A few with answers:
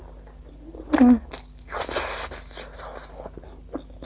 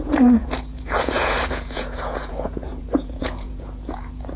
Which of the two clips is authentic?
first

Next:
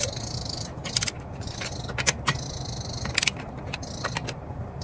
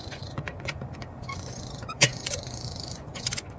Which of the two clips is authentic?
first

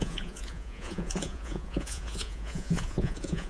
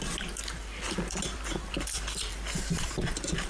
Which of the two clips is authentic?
second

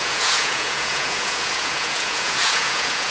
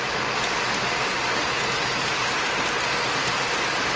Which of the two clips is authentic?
second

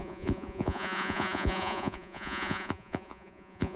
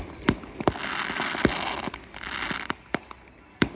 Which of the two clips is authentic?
second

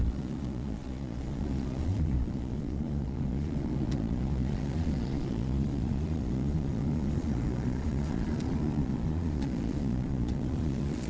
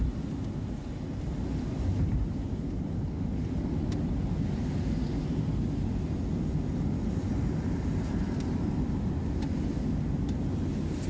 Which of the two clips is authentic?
second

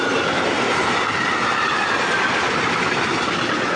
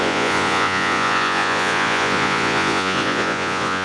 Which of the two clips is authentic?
first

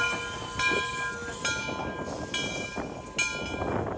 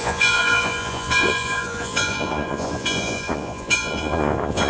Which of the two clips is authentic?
first